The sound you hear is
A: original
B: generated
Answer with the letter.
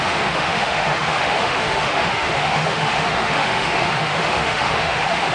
B